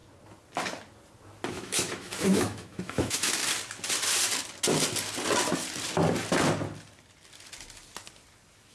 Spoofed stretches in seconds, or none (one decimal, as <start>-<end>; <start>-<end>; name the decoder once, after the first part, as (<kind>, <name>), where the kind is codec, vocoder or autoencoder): 1.5-3.4 (autoencoder, DAC-VAE)